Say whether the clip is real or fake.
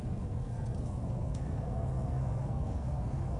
fake